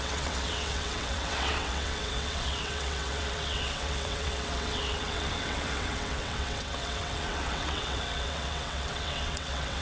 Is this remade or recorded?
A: remade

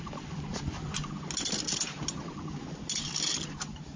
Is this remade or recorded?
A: recorded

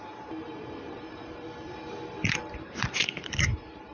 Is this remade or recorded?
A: remade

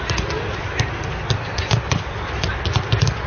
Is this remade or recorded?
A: recorded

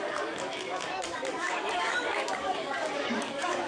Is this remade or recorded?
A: remade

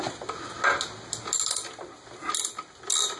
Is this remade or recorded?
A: recorded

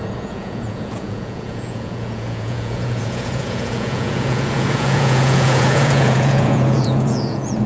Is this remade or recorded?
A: remade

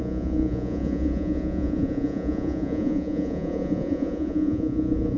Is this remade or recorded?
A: remade